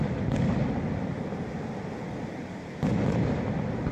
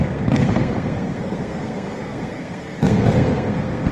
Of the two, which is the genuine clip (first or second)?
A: first